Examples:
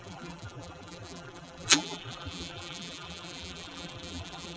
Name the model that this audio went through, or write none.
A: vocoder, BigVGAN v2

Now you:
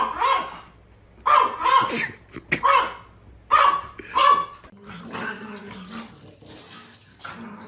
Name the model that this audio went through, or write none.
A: none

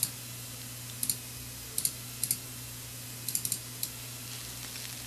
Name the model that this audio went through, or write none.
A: none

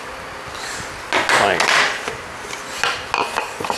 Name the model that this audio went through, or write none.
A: none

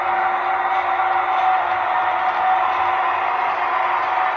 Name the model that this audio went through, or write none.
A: none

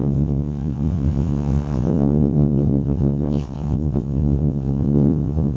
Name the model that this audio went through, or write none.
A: vocoder, WaveNeXt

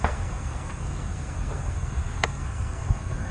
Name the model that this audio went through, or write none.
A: codec, SNAC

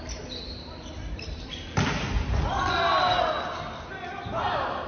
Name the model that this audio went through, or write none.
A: none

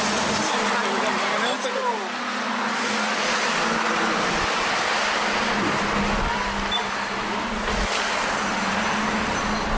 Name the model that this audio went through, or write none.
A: none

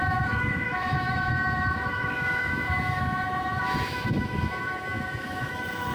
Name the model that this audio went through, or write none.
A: autoencoder, DAC-VAE